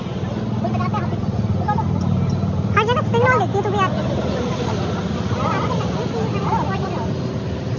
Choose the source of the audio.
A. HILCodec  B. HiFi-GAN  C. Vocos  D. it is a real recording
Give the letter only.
D